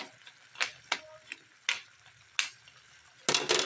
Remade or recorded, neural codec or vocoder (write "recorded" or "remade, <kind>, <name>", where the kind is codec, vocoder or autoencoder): recorded